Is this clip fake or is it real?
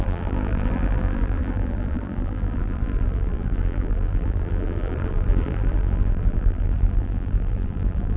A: fake